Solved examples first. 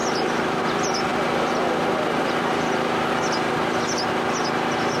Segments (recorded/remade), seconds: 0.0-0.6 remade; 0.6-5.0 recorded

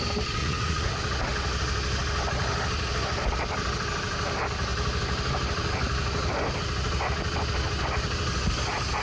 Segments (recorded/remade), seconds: 0.0-0.4 recorded; 0.4-0.9 remade; 0.9-9.0 recorded

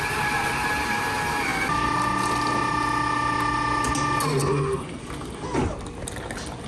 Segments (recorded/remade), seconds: 0.0-4.4 recorded; 4.4-5.0 remade; 5.0-6.7 recorded

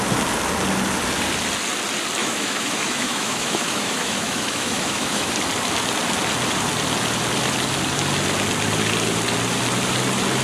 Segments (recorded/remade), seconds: 0.0-2.2 recorded; 2.2-5.3 remade; 5.3-10.4 recorded